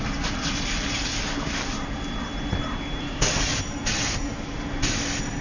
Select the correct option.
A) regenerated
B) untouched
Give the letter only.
B